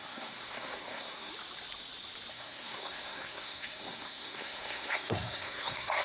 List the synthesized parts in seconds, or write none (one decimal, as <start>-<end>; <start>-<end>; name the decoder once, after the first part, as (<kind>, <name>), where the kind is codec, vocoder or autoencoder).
0.0-1.3 (codec, SNAC); 2.3-6.0